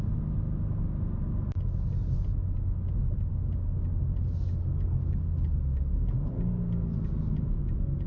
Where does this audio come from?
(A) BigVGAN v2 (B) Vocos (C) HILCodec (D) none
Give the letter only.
D